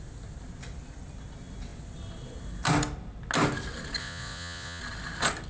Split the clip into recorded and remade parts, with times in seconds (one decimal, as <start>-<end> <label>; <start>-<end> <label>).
0.0-4.0 recorded; 4.0-4.8 remade; 4.8-5.5 recorded